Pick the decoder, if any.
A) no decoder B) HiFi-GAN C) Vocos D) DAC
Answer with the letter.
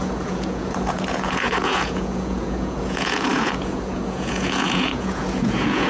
C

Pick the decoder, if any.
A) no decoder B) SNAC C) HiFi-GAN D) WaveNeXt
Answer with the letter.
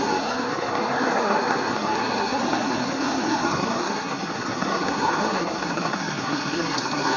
B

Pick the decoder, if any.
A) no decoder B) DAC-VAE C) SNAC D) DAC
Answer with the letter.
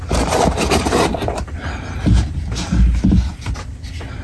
A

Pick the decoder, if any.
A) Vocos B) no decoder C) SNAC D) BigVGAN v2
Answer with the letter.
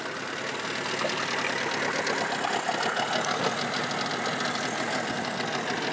B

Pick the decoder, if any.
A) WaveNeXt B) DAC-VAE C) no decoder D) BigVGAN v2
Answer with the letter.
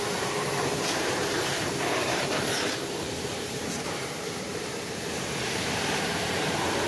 D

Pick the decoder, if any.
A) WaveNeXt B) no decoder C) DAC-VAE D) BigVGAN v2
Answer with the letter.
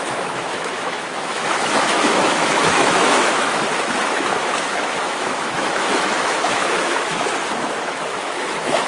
C